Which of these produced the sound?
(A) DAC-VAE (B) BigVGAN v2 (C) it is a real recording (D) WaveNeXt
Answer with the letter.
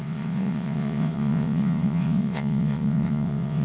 D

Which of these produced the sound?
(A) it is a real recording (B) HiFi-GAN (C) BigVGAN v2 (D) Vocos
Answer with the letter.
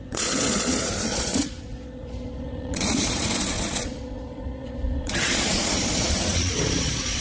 D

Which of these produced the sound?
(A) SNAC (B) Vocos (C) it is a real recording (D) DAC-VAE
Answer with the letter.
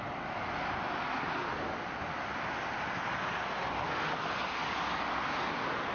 C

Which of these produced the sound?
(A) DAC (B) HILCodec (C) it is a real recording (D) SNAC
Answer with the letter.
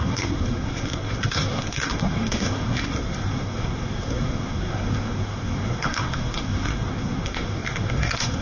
D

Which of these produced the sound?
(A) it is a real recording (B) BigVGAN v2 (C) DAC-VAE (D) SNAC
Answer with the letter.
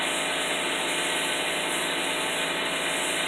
A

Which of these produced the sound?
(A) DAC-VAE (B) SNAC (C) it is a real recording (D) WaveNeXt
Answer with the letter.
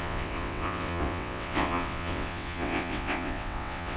D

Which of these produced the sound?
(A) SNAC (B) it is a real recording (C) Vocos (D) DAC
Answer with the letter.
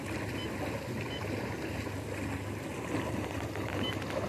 B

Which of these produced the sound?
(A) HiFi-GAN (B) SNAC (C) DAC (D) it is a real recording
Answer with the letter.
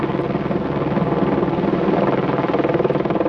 D